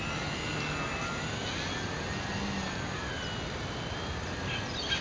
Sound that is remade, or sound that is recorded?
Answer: recorded